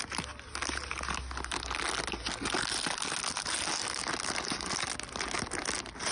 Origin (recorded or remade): recorded